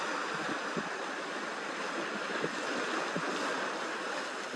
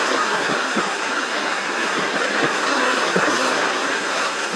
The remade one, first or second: second